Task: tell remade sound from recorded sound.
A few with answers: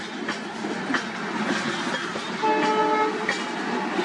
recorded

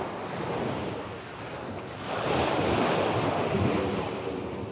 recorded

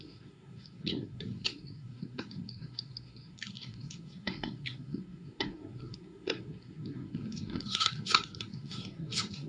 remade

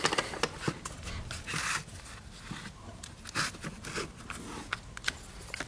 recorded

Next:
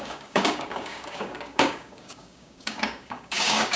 remade